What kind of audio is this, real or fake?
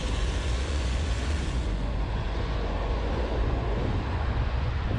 fake